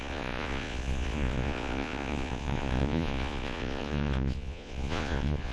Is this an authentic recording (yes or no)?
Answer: no